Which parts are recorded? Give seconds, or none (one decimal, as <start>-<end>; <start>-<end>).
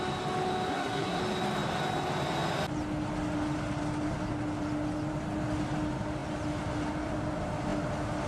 0.0-0.7; 1.2-8.3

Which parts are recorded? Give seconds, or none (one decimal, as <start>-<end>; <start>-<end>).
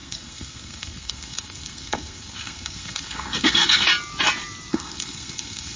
3.9-4.7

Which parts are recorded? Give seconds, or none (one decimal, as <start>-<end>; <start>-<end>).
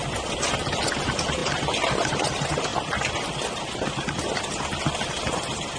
0.0-5.8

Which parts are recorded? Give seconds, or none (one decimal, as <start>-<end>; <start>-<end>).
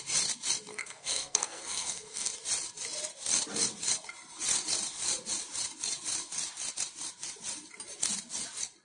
0.0-0.7; 2.3-8.8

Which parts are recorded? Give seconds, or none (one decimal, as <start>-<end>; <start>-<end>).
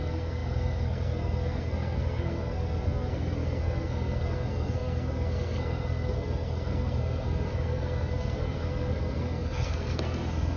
none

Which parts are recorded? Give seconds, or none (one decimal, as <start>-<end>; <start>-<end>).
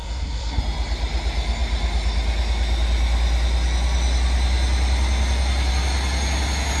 0.6-6.8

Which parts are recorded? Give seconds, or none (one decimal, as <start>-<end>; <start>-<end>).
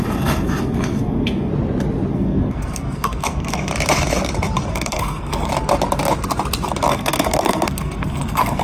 1.5-2.1; 3.7-4.7; 5.5-6.9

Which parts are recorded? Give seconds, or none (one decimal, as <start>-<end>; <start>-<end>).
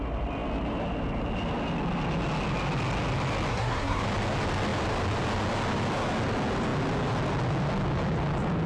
0.0-3.5; 4.0-8.7